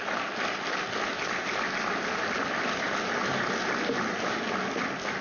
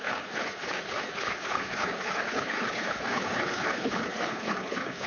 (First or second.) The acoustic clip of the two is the first